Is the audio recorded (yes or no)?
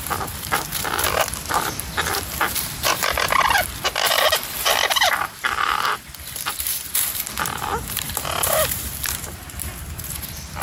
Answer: no